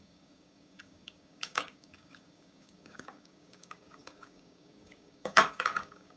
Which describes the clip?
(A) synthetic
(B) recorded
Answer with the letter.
A